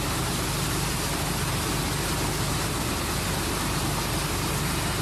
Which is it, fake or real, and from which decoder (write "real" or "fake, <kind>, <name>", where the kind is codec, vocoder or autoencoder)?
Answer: real